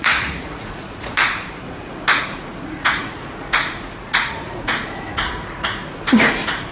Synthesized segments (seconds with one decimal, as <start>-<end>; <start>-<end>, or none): 0.0-6.7

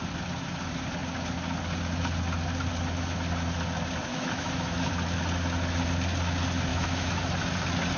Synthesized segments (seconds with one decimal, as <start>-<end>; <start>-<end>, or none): 4.1-4.9; 6.7-7.2

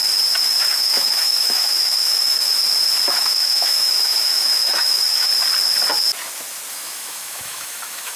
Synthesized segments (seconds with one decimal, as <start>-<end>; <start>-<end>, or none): 0.6-2.6; 3.1-5.3; 6.7-8.2

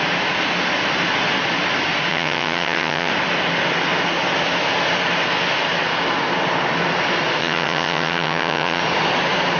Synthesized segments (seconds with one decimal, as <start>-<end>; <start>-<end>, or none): 2.1-3.1; 7.4-8.8

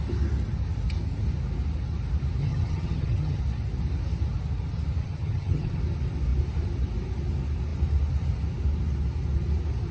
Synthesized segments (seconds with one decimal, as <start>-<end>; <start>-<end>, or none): 2.4-3.4; 5.0-5.8